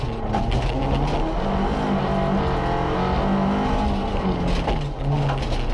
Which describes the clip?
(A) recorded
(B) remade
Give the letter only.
A